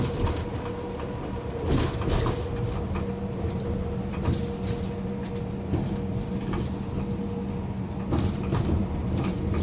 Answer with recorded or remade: recorded